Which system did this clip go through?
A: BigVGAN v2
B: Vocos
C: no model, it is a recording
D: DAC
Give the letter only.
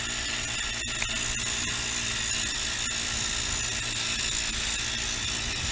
C